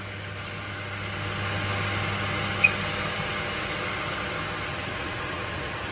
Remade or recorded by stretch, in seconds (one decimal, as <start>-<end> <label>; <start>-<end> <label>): 0.0-4.7 recorded; 4.7-5.9 remade